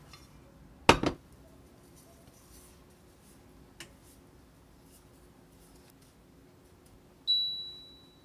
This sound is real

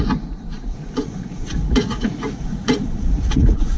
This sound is fake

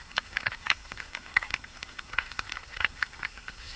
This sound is fake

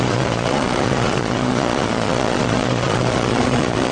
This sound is fake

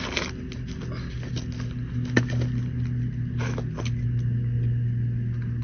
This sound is real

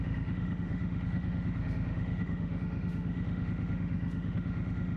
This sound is fake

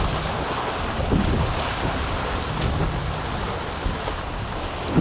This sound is real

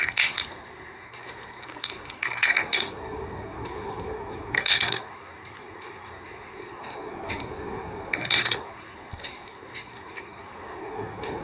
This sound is fake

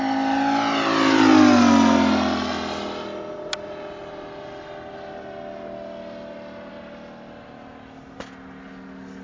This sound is real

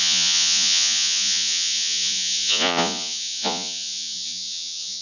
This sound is fake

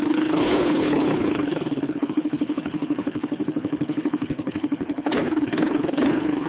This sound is fake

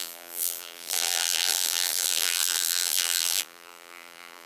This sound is fake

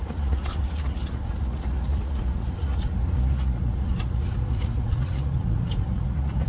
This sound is fake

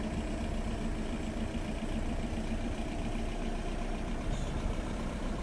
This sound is fake